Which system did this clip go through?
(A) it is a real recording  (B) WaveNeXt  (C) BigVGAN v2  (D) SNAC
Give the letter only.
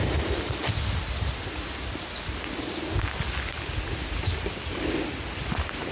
A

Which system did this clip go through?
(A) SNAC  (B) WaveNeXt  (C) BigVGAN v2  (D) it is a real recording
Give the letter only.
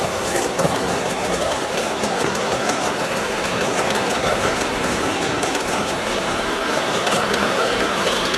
A